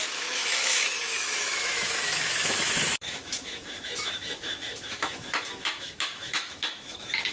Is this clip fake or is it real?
fake